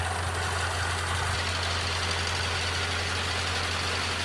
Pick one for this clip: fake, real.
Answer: real